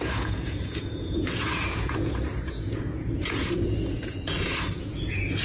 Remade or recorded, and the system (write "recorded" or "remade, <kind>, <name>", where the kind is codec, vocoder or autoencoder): remade, vocoder, Vocos